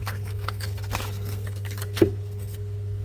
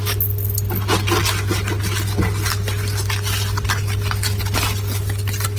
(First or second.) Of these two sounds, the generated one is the first